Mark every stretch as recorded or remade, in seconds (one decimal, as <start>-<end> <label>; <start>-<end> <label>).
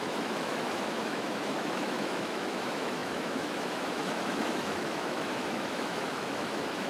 0.0-6.9 remade